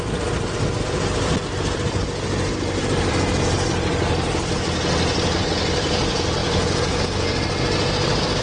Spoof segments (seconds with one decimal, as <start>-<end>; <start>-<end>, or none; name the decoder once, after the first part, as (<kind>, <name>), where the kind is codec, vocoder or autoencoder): 6.4-7.0 (vocoder, Vocos)

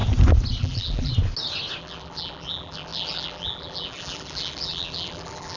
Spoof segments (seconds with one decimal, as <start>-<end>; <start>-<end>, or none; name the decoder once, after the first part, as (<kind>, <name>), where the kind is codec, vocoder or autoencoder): 0.6-1.1 (vocoder, BigVGAN v2); 1.8-5.6

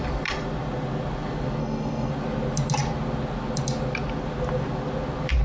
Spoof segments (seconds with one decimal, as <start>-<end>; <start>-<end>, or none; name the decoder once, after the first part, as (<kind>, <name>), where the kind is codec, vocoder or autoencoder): 1.6-2.1 (codec, SNAC)

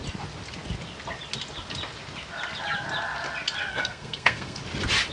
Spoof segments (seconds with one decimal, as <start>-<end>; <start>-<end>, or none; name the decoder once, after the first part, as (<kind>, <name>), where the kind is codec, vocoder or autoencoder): 3.7-4.6 (codec, SNAC)

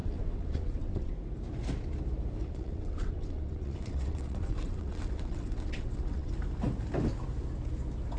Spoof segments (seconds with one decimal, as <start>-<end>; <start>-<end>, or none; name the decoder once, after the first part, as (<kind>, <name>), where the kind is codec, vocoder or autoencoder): 0.0-1.1 (vocoder, WaveNeXt); 2.4-6.3

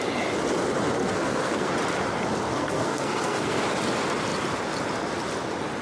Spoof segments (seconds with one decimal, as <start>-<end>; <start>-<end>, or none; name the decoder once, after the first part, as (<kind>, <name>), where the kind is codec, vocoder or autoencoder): 1.0-1.7 (codec, SNAC); 2.5-3.6